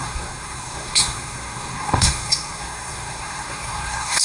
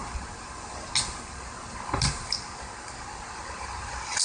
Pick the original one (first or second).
second